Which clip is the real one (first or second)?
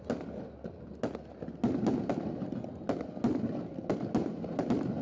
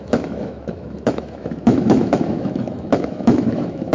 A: first